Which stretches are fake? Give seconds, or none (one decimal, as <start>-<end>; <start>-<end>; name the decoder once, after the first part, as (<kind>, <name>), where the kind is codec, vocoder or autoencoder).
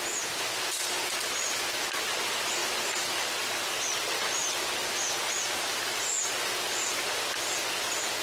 none